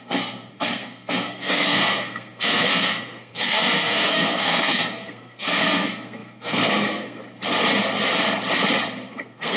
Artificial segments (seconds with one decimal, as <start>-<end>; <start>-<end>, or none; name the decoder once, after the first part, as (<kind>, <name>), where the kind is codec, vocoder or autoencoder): 0.0-7.2 (codec, SNAC); 9.1-9.6